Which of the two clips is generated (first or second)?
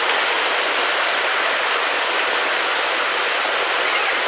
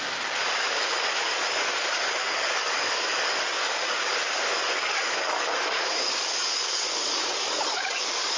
second